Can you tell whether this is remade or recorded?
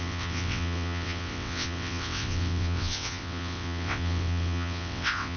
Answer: remade